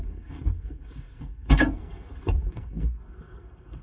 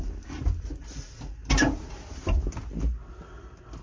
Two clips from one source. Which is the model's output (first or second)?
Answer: first